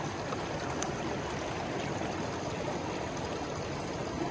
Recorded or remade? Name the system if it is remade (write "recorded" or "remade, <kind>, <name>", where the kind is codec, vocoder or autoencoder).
recorded